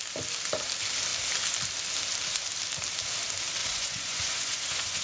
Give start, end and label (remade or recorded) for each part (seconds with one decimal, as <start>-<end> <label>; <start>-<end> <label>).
0.0-3.6 recorded; 3.6-5.0 remade